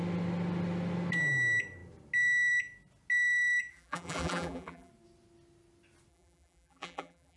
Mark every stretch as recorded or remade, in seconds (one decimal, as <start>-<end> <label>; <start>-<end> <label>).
0.0-3.7 recorded; 3.7-4.9 remade; 4.9-6.1 recorded; 6.1-7.4 remade